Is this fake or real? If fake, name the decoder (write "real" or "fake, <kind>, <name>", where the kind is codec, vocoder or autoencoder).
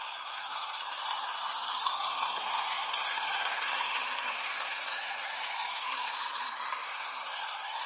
fake, codec, SNAC